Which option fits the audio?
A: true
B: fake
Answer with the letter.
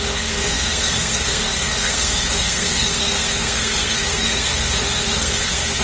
B